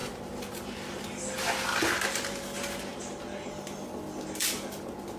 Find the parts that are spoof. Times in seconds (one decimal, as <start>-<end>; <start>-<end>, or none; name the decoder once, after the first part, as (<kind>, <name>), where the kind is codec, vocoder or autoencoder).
none